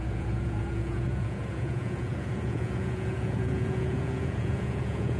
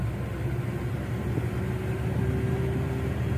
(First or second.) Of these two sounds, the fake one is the first